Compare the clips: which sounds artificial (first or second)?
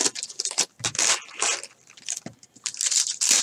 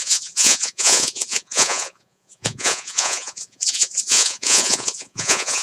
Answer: second